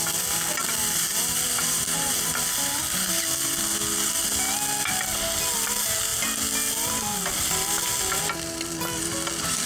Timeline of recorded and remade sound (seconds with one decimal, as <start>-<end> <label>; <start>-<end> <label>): 0.0-1.6 recorded; 1.6-2.3 remade; 2.3-9.7 recorded